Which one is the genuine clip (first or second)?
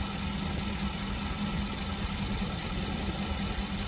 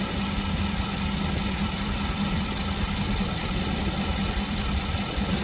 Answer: first